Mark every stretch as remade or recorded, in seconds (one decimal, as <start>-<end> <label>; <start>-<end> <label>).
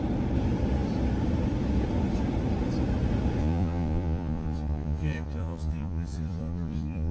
0.0-3.4 recorded; 3.4-7.1 remade